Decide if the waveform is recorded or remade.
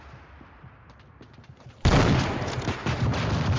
recorded